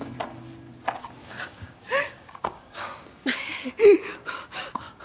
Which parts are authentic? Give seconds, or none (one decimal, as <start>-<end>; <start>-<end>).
0.0-1.2; 3.7-4.2